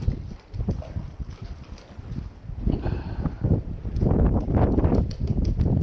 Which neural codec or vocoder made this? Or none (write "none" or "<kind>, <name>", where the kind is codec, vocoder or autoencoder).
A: none